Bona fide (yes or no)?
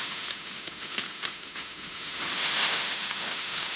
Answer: no